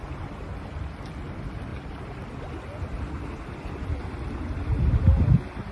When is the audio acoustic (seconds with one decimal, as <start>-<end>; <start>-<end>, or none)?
0.0-5.7